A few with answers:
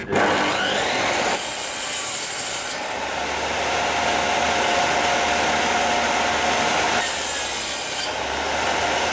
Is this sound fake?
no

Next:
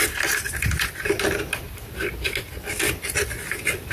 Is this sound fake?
no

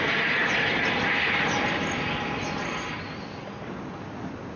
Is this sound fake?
no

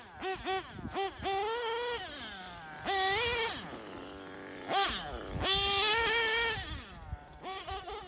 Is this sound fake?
no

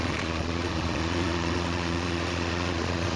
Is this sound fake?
yes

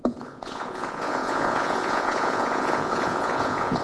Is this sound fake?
yes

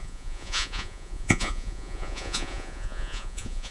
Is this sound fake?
yes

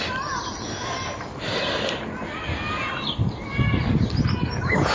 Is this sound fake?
no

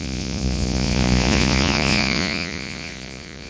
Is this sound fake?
yes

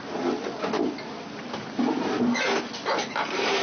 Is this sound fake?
no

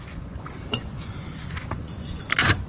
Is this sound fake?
yes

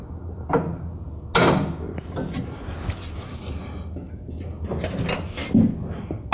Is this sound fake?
no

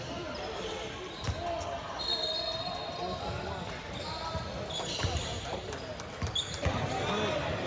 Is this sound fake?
no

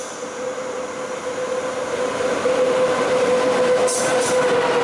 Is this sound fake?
no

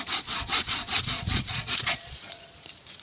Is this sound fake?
yes